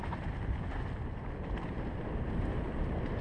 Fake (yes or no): no